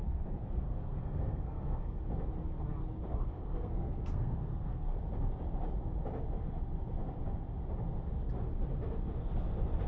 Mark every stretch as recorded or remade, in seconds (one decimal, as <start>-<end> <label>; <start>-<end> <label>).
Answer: 0.0-0.4 recorded; 0.4-2.0 remade; 2.0-3.2 recorded; 3.2-5.0 remade; 5.0-9.9 recorded